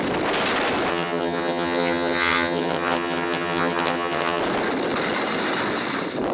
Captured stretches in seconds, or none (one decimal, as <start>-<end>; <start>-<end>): 0.0-0.9; 4.4-6.3